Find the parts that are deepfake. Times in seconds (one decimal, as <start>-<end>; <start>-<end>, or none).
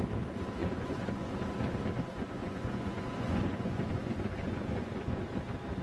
0.6-1.3; 2.1-5.2